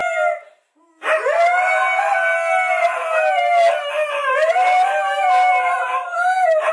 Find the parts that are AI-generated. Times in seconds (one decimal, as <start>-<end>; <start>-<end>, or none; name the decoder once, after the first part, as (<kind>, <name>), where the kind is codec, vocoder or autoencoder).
none